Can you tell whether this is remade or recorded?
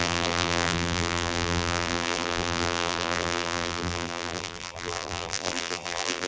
remade